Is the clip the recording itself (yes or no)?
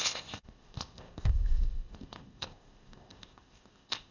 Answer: no